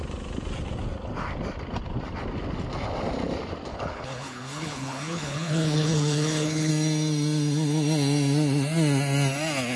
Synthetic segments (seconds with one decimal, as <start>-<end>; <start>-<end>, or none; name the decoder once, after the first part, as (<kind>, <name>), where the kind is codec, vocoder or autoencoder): 3.7-6.7 (codec, HILCodec)

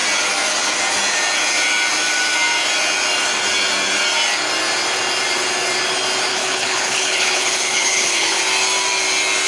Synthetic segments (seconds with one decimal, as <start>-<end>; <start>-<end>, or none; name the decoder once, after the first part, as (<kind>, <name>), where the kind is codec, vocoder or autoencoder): 6.3-8.4 (codec, HILCodec)

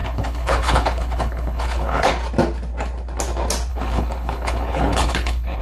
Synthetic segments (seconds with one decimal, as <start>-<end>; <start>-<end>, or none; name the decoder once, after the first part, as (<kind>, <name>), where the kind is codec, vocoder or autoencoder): 0.0-2.1 (codec, HILCodec); 3.7-5.6

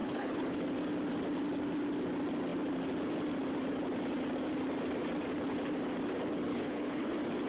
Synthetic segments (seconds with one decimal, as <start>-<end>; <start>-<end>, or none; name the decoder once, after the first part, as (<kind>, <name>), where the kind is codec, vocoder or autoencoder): 0.0-0.6 (codec, HILCodec); 6.5-7.1

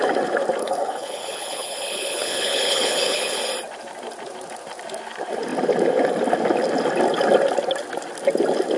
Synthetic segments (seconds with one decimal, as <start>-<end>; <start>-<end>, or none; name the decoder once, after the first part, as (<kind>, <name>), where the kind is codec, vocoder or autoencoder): 0.6-3.4 (codec, HILCodec)